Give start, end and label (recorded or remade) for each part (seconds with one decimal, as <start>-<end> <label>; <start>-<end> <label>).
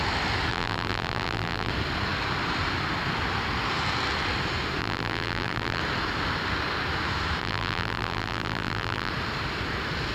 0.0-0.5 recorded; 0.5-1.7 remade; 1.7-4.8 recorded; 4.8-5.8 remade; 5.8-7.4 recorded; 7.4-9.1 remade; 9.1-10.1 recorded